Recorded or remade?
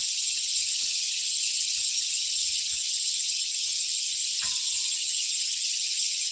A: remade